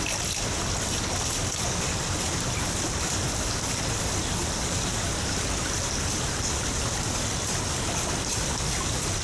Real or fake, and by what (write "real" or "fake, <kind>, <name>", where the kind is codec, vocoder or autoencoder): real